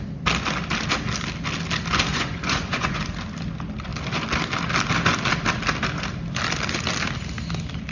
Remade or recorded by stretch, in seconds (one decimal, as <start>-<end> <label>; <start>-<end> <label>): 0.0-2.1 recorded; 2.1-3.0 remade; 3.0-7.9 recorded

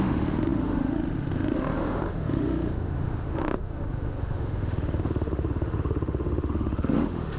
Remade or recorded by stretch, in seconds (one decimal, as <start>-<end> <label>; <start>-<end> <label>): 0.0-7.4 remade

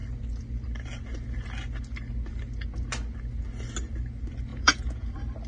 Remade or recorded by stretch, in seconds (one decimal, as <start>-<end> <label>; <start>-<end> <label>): 0.0-4.5 recorded; 4.5-5.1 remade; 5.1-5.5 recorded